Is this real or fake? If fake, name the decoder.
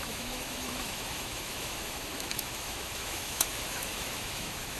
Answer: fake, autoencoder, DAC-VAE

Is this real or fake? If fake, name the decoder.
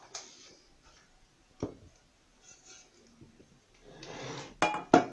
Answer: real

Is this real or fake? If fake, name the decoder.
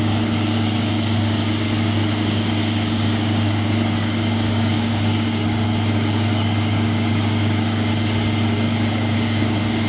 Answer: fake, codec, DAC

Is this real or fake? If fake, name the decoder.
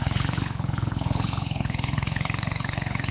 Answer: fake, codec, HILCodec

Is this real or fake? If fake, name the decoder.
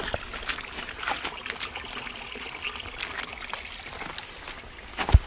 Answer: real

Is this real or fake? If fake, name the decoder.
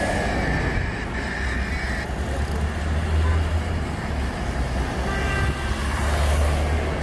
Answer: real